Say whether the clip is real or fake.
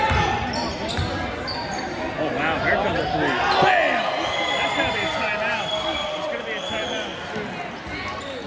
real